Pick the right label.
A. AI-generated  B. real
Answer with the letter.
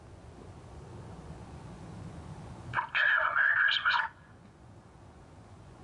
A